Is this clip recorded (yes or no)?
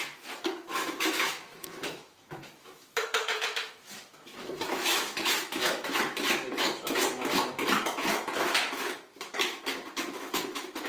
no